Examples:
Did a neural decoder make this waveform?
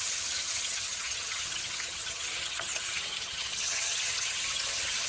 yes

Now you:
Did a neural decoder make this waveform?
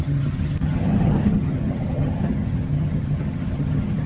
yes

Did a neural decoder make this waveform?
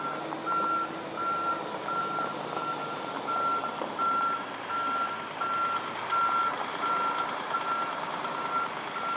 no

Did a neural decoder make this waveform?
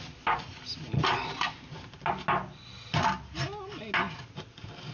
no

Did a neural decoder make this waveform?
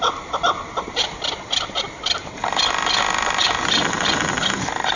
no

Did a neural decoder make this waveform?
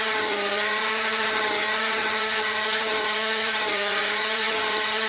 yes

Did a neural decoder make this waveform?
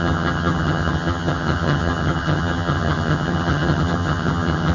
yes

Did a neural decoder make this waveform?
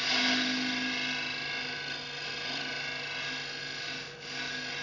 no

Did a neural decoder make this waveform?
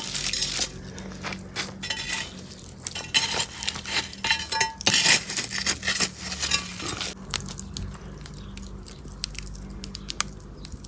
no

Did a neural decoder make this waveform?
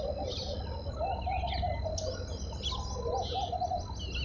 no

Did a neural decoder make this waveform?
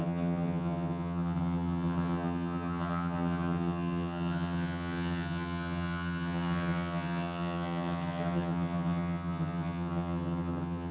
yes